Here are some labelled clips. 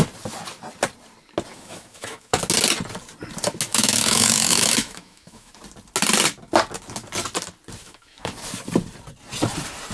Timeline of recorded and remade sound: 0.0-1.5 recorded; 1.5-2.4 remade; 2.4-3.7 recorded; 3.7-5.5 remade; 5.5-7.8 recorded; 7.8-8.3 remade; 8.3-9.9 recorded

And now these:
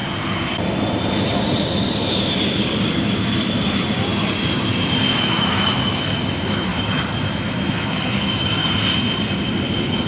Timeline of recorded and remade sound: 0.0-5.2 recorded; 5.2-6.7 remade; 6.7-7.3 recorded; 7.3-8.6 remade; 8.6-10.1 recorded

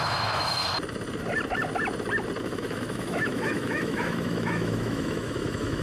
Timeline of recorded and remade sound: 0.0-0.6 remade; 0.6-2.4 recorded; 2.4-5.8 remade

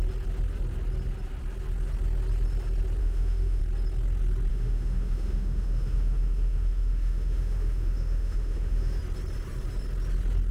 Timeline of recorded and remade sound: 0.0-3.0 recorded; 3.0-3.6 remade; 3.6-4.5 recorded; 4.5-9.0 remade; 9.0-10.5 recorded